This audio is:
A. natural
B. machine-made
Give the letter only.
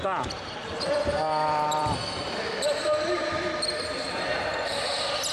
B